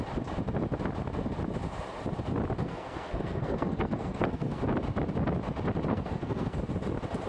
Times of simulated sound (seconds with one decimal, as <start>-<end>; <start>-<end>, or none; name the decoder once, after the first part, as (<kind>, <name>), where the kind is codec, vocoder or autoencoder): 2.6-4.6 (codec, SNAC); 5.9-6.6